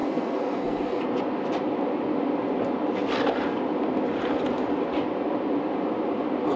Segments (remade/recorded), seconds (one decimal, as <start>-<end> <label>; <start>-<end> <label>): 0.0-1.0 remade; 1.0-6.6 recorded